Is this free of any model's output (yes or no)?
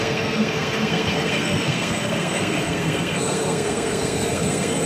no